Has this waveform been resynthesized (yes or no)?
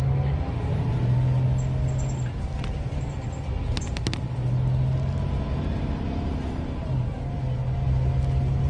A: no